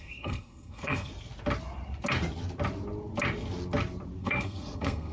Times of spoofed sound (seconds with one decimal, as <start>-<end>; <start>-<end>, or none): 0.0-1.1; 4.2-5.1